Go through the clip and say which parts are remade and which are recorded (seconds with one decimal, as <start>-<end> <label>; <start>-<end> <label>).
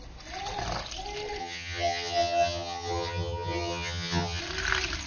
0.0-1.4 recorded; 1.4-4.4 remade; 4.4-5.1 recorded